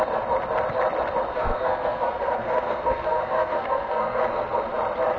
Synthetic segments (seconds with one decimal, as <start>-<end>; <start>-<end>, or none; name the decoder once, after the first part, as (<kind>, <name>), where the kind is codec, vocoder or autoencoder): 1.3-4.2 (codec, SNAC)